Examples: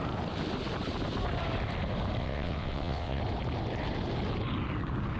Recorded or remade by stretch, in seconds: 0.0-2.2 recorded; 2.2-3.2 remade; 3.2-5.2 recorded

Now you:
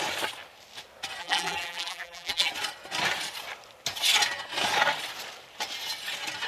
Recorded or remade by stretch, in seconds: 0.0-1.2 recorded; 1.2-2.5 remade; 2.5-6.5 recorded

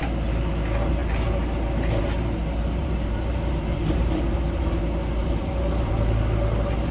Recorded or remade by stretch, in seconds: 0.0-2.8 recorded; 2.8-4.8 remade; 4.8-5.2 recorded; 5.2-5.9 remade; 5.9-6.9 recorded